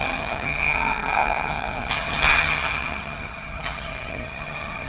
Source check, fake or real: fake